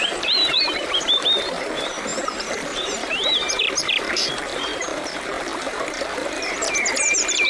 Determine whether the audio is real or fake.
fake